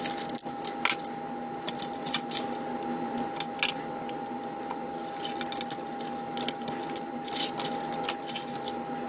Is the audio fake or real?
real